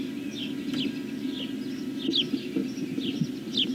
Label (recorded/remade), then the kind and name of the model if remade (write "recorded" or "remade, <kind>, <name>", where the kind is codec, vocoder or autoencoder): recorded